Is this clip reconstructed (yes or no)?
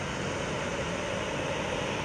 no